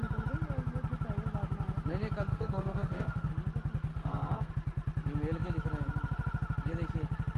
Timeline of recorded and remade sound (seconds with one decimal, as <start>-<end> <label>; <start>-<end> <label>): 0.0-2.3 recorded; 2.3-3.3 remade; 3.3-3.9 recorded; 3.9-4.5 remade; 4.5-7.4 recorded